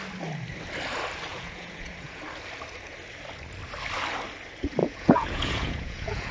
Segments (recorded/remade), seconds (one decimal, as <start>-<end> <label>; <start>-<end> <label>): 0.0-1.3 recorded; 1.3-2.2 remade; 2.2-4.8 recorded; 4.8-6.3 remade